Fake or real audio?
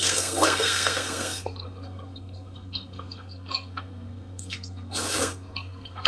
fake